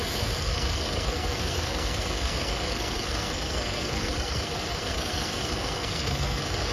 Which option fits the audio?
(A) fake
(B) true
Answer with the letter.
A